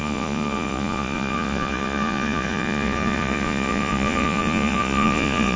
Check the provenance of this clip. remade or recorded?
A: remade